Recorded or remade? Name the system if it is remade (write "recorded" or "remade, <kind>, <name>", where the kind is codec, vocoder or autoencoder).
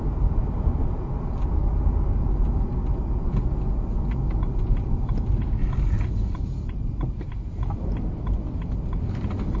recorded